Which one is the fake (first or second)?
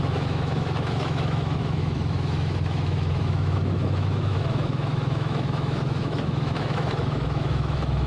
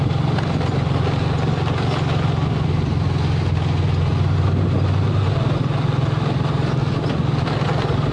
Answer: first